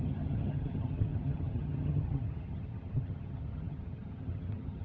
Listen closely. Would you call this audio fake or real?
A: fake